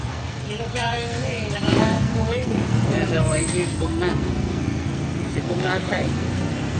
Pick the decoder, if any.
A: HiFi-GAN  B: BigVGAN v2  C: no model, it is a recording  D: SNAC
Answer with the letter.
D